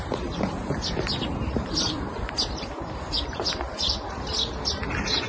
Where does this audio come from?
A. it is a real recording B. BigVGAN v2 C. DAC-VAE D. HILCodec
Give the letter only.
B